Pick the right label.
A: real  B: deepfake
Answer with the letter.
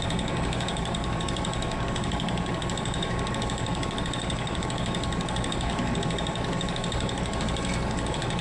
B